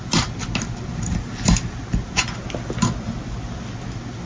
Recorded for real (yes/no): yes